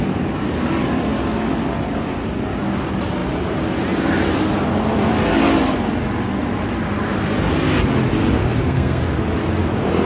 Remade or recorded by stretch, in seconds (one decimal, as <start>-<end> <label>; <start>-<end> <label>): 0.0-8.4 recorded; 8.4-9.0 remade; 9.0-10.1 recorded